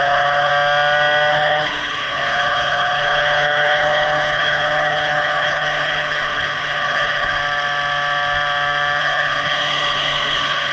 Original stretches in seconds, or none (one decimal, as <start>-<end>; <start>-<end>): 0.5-1.3; 7.4-9.0